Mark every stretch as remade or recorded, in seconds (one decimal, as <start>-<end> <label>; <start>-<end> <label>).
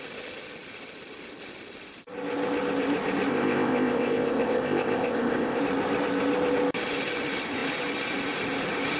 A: 0.0-3.3 recorded; 3.3-5.6 remade; 5.6-9.0 recorded